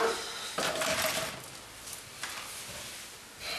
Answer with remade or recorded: recorded